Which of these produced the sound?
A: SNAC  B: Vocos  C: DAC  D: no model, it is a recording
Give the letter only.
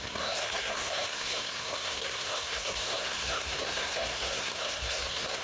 A